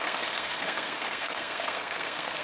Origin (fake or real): fake